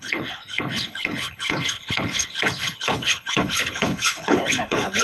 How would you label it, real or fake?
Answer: fake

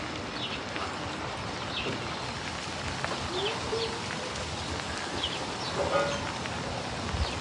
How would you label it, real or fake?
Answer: real